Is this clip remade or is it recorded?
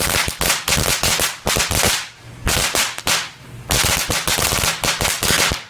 recorded